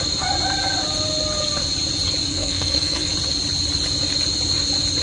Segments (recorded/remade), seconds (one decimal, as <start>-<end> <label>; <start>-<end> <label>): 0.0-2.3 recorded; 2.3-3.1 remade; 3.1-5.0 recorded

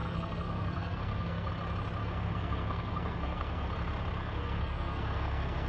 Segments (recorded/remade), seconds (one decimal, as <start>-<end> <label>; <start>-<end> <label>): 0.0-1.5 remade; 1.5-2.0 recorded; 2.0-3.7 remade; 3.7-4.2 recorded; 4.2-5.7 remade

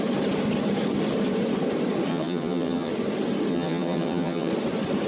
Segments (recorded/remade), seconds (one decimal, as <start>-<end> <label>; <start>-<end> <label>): 0.0-2.1 recorded; 2.1-2.9 remade; 2.9-3.5 recorded; 3.5-4.5 remade; 4.5-5.1 recorded

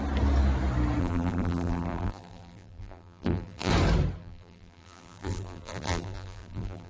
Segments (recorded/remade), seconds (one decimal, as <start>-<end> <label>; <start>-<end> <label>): 0.0-1.0 recorded; 1.0-3.7 remade; 3.7-4.2 recorded; 4.2-6.9 remade

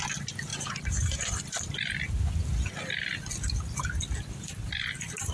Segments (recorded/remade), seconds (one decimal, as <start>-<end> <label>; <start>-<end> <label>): 0.0-0.5 recorded; 0.5-1.4 remade; 1.4-5.3 recorded